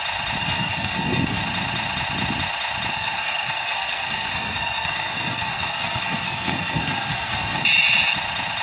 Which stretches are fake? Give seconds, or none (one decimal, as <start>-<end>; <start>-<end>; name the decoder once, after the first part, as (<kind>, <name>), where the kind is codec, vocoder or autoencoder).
0.4-1.4 (codec, SNAC); 2.9-7.6